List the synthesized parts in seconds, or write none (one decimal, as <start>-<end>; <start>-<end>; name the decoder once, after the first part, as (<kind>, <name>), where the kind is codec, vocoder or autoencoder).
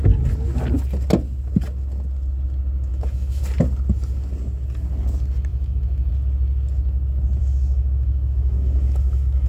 2.9-3.4 (autoencoder, DAC-VAE); 5.5-6.1; 7.4-9.5